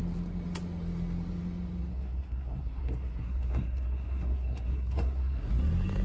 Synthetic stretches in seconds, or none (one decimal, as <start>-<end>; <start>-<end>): 1.9-5.5